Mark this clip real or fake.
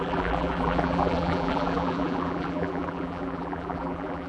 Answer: fake